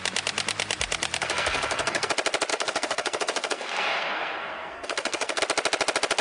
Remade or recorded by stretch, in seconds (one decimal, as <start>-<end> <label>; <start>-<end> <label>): 0.0-1.2 recorded; 1.2-2.1 remade; 2.1-2.5 recorded; 2.5-5.4 remade; 5.4-6.2 recorded